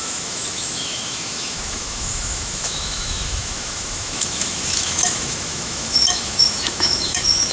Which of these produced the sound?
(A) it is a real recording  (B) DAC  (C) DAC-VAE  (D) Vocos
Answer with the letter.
C